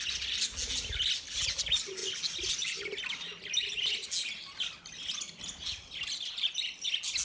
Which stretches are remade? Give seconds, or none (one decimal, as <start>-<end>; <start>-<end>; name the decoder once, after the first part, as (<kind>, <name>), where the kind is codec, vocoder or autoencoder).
none